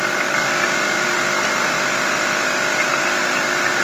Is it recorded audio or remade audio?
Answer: recorded